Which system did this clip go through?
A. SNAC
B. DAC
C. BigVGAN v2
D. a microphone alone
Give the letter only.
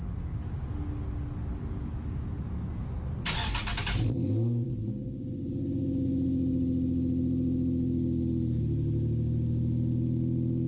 D